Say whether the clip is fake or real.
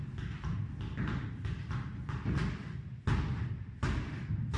real